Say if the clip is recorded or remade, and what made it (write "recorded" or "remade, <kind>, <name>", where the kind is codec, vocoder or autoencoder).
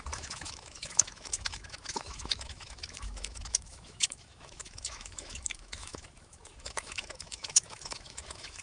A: remade, autoencoder, DAC-VAE